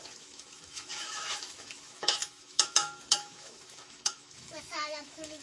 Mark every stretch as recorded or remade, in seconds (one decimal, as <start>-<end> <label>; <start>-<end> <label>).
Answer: 0.0-5.4 remade